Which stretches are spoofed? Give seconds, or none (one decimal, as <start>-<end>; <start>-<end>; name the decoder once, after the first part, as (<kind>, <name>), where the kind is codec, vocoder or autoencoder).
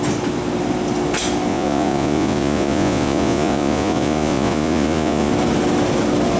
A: 1.5-5.3 (vocoder, Vocos)